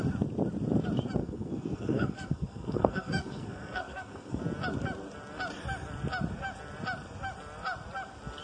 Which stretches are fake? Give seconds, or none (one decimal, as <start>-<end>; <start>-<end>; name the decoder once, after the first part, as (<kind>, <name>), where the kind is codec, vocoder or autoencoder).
1.2-4.4 (codec, SNAC)